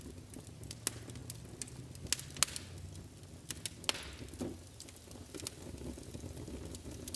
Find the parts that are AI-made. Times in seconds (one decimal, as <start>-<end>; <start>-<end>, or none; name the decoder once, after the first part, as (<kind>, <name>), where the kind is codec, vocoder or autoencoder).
none

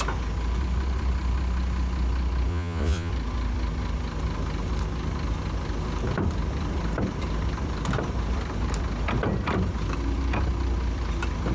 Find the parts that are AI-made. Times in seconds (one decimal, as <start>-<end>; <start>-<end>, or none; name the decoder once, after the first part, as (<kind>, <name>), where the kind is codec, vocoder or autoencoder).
2.5-3.1 (vocoder, Vocos)

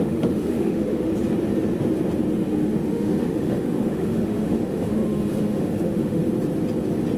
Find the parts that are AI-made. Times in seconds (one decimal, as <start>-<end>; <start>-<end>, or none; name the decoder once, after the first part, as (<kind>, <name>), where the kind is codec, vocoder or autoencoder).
0.0-1.1 (autoencoder, DAC-VAE); 2.3-6.2

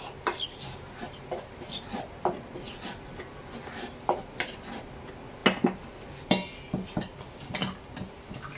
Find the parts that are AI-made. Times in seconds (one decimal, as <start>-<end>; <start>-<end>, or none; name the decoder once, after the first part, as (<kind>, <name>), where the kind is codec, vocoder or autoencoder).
none